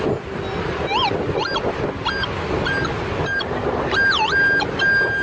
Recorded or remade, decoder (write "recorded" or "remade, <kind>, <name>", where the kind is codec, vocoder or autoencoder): recorded